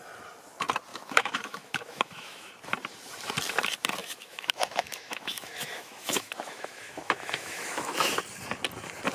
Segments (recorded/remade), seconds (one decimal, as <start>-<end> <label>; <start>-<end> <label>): 0.0-0.9 recorded; 0.9-2.5 remade; 2.5-4.0 recorded; 4.0-8.2 remade; 8.2-9.1 recorded